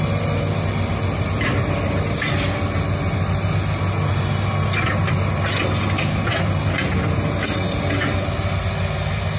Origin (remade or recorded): recorded